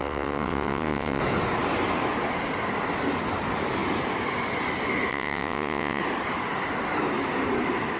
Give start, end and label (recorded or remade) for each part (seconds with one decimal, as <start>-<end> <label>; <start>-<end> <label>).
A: 0.0-1.2 remade; 1.2-5.1 recorded; 5.1-6.0 remade; 6.0-8.0 recorded